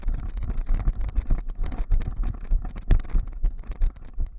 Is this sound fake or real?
real